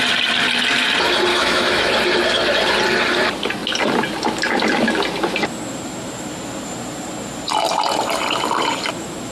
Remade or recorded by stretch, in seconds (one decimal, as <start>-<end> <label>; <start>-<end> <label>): 0.0-1.3 recorded; 1.3-1.9 remade; 1.9-9.3 recorded

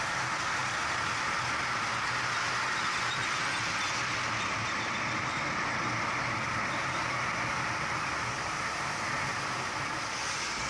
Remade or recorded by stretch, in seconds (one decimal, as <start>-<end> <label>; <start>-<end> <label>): 0.0-10.7 recorded

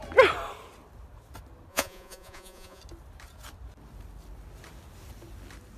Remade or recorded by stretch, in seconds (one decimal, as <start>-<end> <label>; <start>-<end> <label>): 0.0-1.7 recorded; 1.7-2.8 remade; 2.8-5.8 recorded

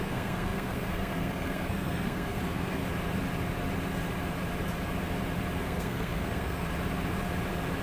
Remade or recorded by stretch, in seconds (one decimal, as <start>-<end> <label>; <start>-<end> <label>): 0.0-2.8 remade; 2.8-5.6 recorded; 5.6-6.7 remade; 6.7-7.8 recorded